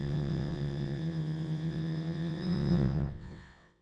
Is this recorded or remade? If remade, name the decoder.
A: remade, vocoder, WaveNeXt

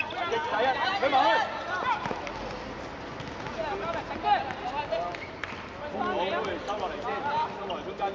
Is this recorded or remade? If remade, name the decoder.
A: recorded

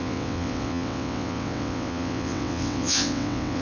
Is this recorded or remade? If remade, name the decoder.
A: remade, vocoder, WaveNeXt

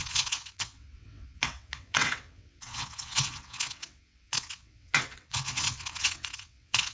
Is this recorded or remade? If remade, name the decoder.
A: remade, vocoder, WaveNeXt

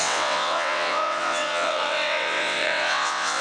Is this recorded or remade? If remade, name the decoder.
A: remade, vocoder, WaveNeXt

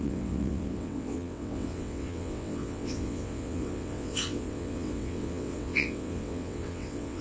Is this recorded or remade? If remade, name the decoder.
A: remade, vocoder, WaveNeXt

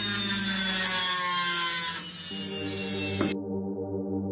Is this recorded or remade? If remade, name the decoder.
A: recorded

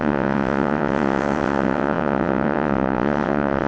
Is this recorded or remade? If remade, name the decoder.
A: remade, vocoder, WaveNeXt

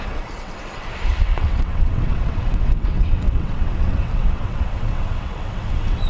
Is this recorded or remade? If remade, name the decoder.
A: remade, vocoder, WaveNeXt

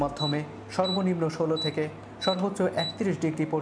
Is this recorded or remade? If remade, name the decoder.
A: recorded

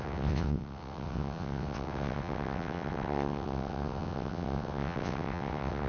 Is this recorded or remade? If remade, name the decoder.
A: remade, vocoder, WaveNeXt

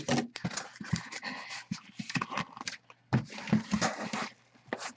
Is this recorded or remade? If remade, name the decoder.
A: recorded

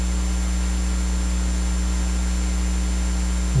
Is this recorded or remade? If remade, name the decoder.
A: recorded